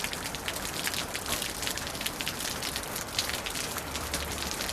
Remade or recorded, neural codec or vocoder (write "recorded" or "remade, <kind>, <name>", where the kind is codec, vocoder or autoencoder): remade, vocoder, BigVGAN v2